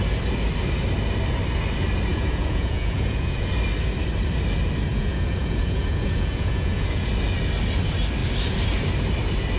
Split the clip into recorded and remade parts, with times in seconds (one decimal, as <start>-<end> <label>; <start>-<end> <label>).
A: 0.0-2.1 recorded; 2.1-3.5 remade; 3.5-4.9 recorded; 4.9-7.1 remade; 7.1-9.6 recorded